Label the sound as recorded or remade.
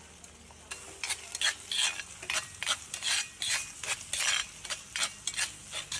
recorded